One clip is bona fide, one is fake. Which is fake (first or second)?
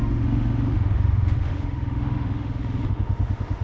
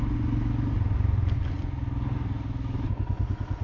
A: first